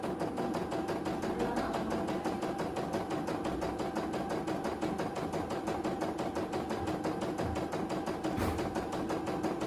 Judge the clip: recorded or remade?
recorded